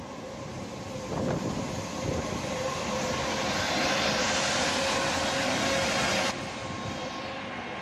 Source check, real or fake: real